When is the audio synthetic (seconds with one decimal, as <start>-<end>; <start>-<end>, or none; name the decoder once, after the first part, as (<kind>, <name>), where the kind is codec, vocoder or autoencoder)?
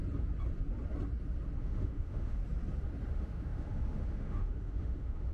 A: 1.6-2.4 (autoencoder, DAC-VAE); 3.1-5.3